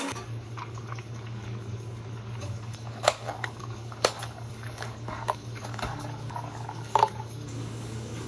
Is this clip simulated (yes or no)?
yes